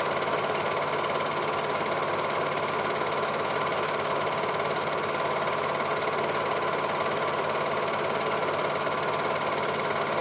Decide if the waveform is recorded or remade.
recorded